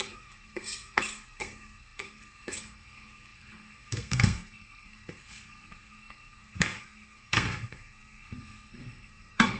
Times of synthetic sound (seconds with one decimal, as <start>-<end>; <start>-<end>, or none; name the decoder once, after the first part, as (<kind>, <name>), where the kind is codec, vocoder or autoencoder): 0.0-9.6 (codec, SNAC)

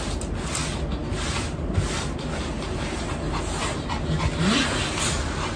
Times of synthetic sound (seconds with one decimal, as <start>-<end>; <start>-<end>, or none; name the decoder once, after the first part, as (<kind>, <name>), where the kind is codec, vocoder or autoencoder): none

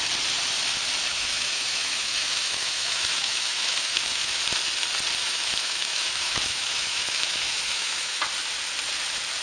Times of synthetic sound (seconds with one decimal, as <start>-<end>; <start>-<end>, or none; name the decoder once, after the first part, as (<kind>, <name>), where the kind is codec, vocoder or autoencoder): 1.1-4.4 (autoencoder, DAC-VAE); 5.2-8.2

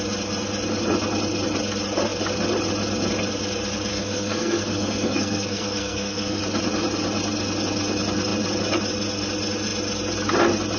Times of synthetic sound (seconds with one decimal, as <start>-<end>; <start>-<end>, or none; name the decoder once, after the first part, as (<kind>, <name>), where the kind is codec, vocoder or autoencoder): 3.9-6.4 (codec, SNAC)